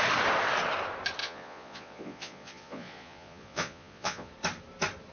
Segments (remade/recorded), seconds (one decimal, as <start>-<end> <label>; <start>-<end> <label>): 0.0-1.2 recorded; 1.2-4.3 remade; 4.3-5.1 recorded